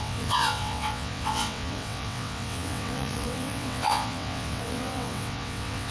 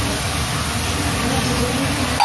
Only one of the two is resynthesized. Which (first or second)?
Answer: first